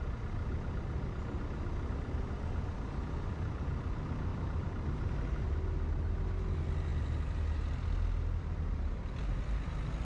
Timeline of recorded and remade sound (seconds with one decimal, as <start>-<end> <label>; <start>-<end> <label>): 0.0-4.3 recorded; 4.3-5.1 remade; 5.1-6.9 recorded; 6.9-7.7 remade; 7.7-10.0 recorded